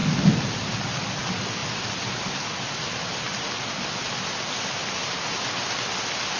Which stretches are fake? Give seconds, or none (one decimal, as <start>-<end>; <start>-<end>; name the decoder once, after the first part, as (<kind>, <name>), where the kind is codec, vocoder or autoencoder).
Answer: none